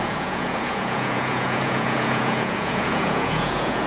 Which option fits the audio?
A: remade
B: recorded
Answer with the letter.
A